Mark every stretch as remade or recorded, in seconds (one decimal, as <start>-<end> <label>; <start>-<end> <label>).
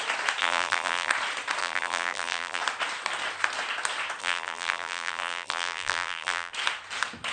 0.0-0.4 recorded; 0.4-1.1 remade; 1.1-1.6 recorded; 1.6-2.6 remade; 2.6-4.2 recorded; 4.2-6.5 remade; 6.5-7.3 recorded